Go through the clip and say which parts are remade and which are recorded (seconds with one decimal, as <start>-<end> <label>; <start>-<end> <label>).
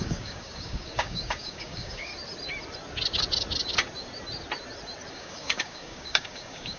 0.0-2.1 remade; 2.1-5.1 recorded; 5.1-6.8 remade